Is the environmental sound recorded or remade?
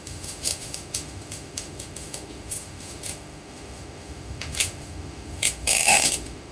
remade